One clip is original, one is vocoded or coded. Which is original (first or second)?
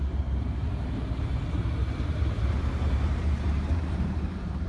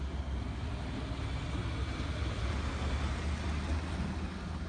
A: second